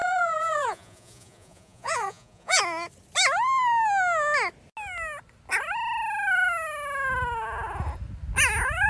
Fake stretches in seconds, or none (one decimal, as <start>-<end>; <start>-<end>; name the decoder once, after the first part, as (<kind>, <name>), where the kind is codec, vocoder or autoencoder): 0.0-2.6 (vocoder, Vocos)